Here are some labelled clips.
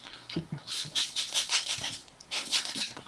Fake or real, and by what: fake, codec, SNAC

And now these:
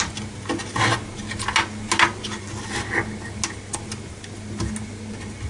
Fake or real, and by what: real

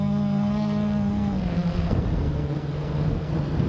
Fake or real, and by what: fake, codec, SNAC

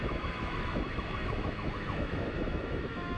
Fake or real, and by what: fake, autoencoder, DAC-VAE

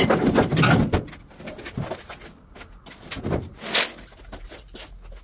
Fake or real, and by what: real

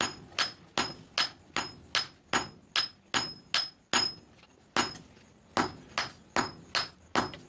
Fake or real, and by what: real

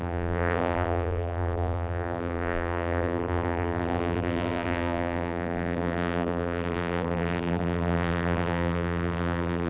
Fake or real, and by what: fake, vocoder, BigVGAN v2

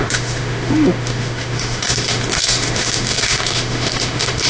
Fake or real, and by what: fake, autoencoder, DAC-VAE